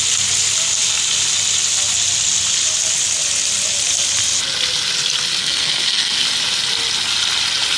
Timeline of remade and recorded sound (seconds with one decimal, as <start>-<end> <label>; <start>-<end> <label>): 0.0-5.4 recorded; 5.4-6.2 remade; 6.2-7.8 recorded